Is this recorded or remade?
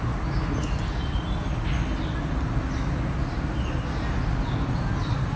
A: recorded